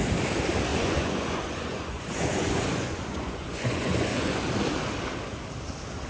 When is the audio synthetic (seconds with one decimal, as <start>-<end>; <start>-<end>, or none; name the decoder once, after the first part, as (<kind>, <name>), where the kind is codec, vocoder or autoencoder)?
0.7-4.4 (vocoder, Vocos)